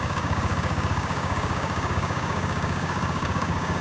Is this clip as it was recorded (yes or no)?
no